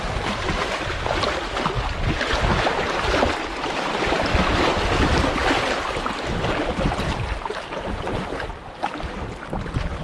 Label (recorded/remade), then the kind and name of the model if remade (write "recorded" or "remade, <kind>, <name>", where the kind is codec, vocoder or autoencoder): recorded